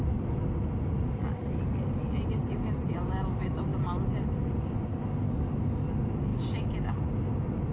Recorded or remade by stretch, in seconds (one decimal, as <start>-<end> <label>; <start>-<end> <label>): 0.0-7.7 recorded